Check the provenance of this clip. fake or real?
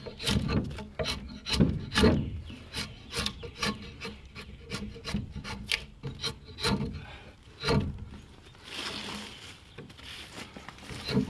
real